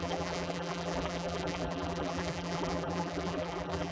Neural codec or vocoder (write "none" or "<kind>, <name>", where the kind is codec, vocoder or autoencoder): vocoder, BigVGAN v2